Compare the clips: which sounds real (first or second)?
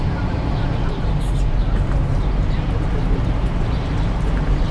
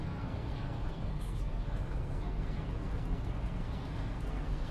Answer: first